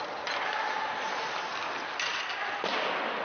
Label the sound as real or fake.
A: real